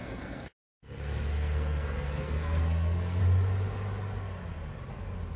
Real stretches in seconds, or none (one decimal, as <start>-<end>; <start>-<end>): 3.2-5.4